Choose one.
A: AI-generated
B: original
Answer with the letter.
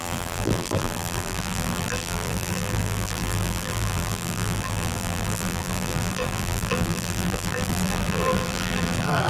A